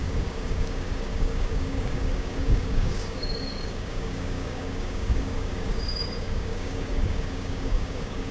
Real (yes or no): no